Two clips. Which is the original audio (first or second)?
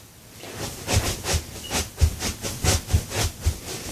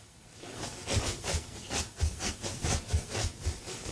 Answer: first